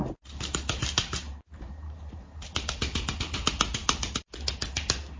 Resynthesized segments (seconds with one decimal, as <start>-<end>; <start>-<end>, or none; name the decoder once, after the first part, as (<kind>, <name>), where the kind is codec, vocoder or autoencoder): 0.0-3.1 (vocoder, BigVGAN v2)